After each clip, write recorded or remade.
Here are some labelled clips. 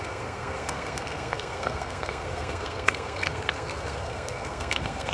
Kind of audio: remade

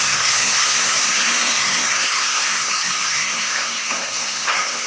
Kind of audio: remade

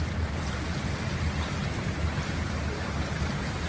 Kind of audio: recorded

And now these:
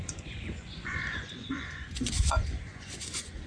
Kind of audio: remade